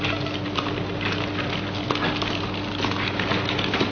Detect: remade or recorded recorded